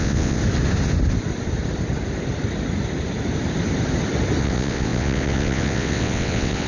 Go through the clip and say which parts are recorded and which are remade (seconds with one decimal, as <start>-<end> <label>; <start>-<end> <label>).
0.0-0.4 remade; 0.4-4.4 recorded; 4.4-6.7 remade